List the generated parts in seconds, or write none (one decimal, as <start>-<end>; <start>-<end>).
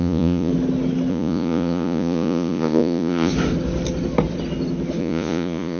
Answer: 0.0-0.5; 1.1-3.3; 5.0-5.8